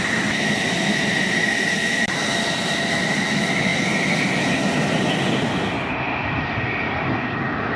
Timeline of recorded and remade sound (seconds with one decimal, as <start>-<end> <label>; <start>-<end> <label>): 0.0-7.8 recorded